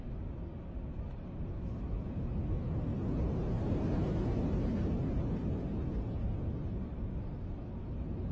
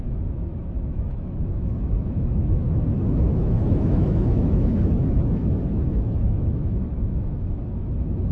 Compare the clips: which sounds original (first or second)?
first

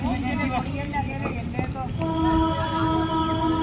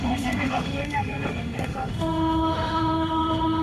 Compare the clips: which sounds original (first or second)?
first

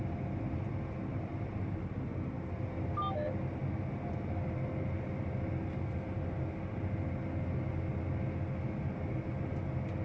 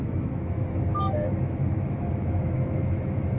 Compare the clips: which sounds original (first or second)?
first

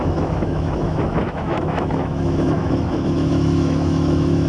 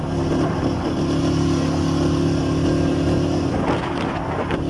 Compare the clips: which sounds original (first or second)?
second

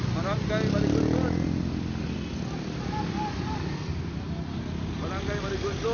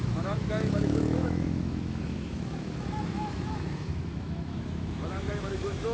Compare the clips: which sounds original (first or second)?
first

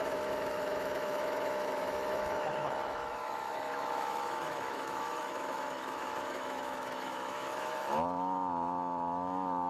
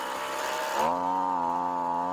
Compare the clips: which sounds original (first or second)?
second